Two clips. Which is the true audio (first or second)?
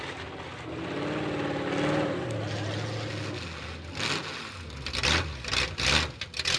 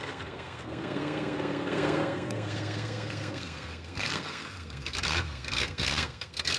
first